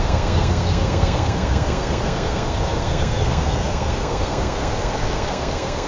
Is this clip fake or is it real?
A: fake